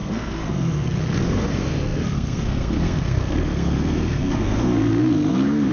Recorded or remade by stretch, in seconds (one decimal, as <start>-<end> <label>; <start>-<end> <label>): 0.0-5.7 remade